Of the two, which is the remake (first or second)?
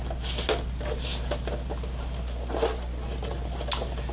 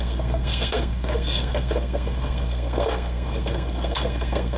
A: second